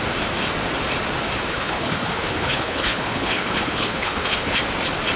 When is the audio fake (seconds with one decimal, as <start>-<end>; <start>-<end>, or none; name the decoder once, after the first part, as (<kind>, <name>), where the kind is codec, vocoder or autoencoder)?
1.5-4.6 (codec, HILCodec)